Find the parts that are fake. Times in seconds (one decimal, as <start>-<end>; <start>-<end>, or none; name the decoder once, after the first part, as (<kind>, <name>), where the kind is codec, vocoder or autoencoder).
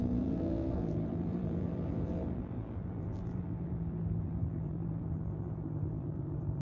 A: 0.0-6.6 (vocoder, BigVGAN v2)